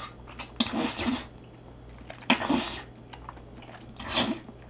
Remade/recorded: recorded